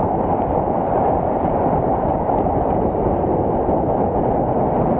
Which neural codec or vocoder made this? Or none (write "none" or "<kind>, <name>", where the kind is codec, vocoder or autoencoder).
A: none